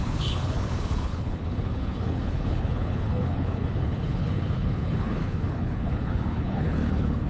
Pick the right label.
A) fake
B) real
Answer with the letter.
A